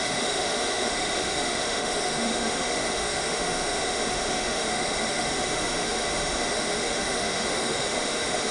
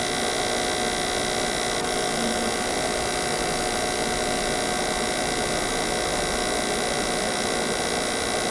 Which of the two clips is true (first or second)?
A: second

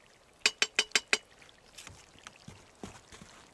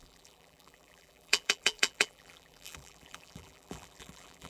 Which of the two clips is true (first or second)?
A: first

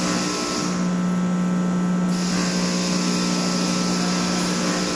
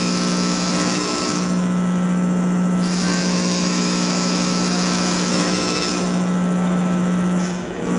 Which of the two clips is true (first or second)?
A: first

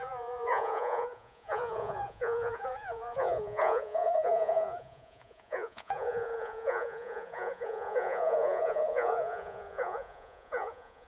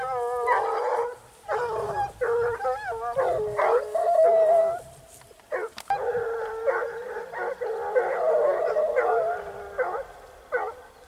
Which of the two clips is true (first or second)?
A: second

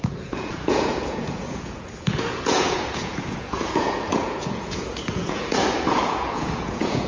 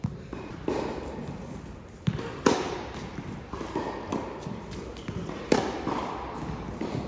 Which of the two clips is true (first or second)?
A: second